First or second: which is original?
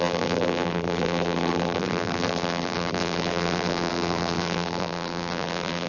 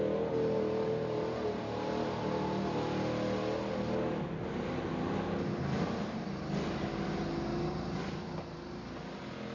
second